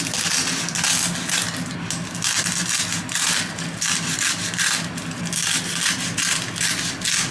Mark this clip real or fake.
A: real